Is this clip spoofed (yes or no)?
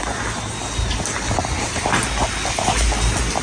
no